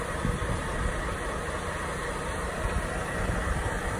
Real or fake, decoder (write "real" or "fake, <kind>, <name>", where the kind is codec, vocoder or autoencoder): real